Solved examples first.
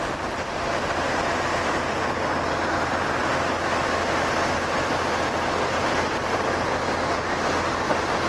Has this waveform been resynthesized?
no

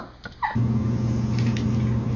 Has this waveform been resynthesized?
no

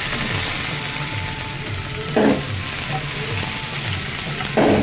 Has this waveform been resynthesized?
no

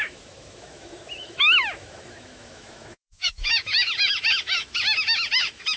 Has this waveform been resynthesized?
yes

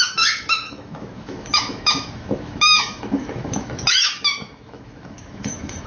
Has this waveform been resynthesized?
yes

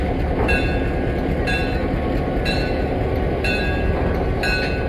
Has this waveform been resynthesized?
no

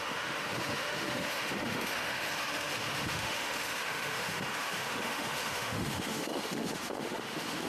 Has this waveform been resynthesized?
yes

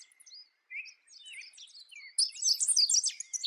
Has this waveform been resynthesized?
no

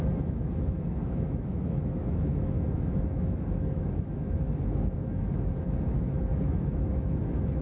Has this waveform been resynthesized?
yes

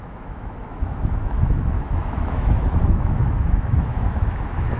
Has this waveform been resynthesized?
yes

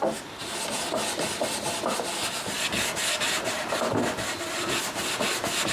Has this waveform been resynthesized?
no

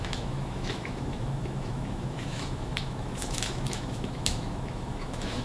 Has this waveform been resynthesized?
yes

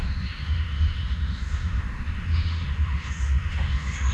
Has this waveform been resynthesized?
yes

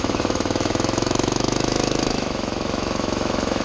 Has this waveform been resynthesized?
yes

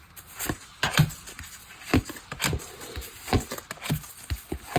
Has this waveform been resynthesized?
no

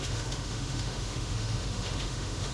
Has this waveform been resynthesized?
yes